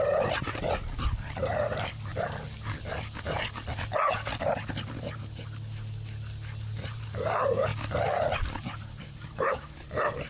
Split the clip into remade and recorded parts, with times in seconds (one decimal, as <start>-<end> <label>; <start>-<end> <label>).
0.0-2.1 remade; 2.1-4.7 recorded; 4.7-5.2 remade; 5.2-6.8 recorded; 6.8-7.7 remade; 7.7-9.1 recorded; 9.1-10.3 remade